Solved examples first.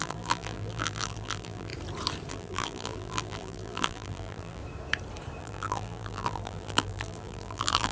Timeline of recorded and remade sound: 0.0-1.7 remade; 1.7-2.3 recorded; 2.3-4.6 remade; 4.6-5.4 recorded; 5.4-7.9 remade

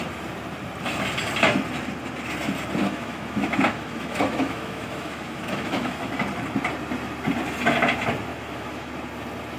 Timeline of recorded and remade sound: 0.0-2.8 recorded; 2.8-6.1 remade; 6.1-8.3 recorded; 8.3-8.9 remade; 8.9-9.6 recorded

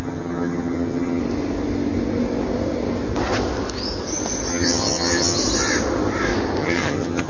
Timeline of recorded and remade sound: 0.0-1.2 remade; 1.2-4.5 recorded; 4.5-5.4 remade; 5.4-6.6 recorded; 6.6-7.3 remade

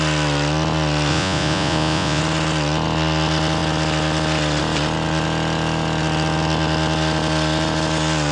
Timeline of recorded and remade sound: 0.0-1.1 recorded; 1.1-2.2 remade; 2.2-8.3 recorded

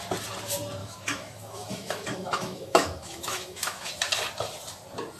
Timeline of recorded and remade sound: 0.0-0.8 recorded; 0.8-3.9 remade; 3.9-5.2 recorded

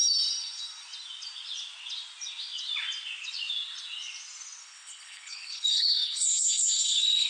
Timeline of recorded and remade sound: 0.0-4.6 recorded; 4.6-7.3 remade

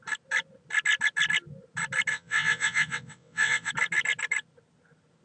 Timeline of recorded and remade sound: 0.0-2.1 recorded; 2.1-3.7 remade; 3.7-5.2 recorded

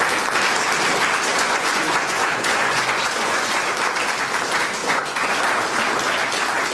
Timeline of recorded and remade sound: 0.0-1.3 recorded; 1.3-3.6 remade; 3.6-4.8 recorded; 4.8-5.4 remade; 5.4-6.7 recorded